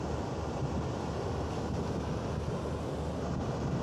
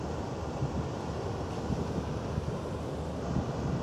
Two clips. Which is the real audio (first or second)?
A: first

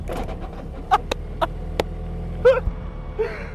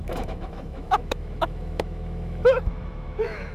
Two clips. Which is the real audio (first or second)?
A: first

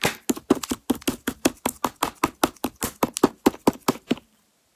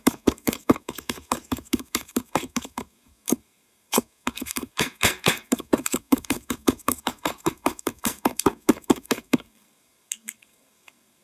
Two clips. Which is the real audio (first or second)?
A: first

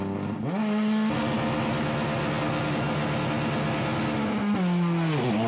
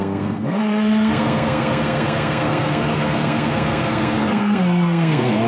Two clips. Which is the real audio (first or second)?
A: first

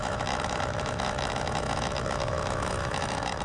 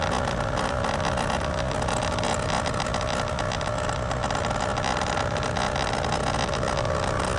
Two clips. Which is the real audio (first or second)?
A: second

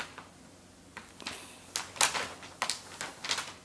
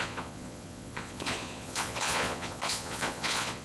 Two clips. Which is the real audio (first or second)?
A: first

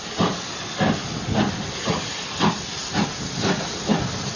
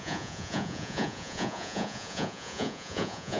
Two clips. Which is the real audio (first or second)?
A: first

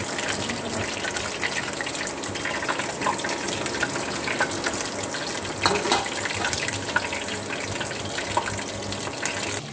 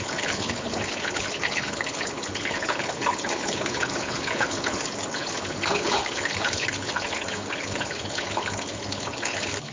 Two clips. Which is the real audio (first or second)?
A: first